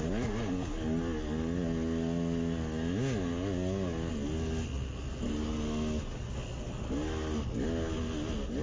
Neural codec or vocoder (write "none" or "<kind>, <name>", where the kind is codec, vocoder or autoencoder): none